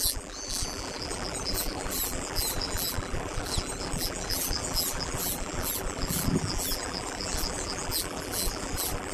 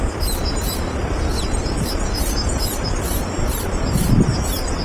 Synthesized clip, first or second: first